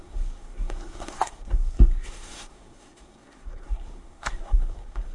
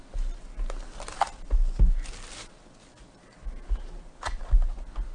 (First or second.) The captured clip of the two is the second